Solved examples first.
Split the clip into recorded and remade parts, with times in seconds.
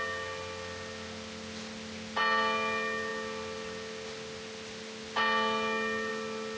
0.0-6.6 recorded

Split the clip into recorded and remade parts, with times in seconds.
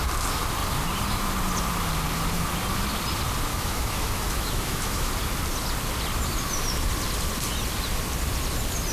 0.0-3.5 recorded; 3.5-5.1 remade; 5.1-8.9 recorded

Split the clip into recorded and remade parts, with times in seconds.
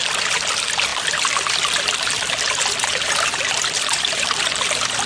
0.0-5.1 recorded